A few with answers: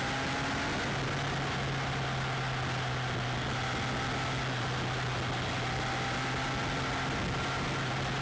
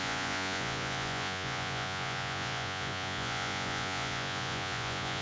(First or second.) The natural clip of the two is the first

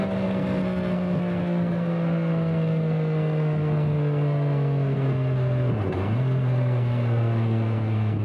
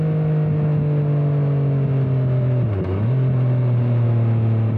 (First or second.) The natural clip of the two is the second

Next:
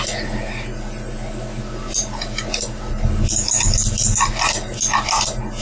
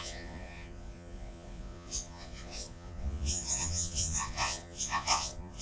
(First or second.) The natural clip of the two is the first